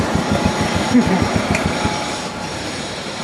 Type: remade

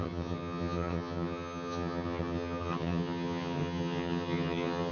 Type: remade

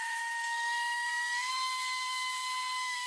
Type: remade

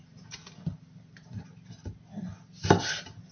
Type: recorded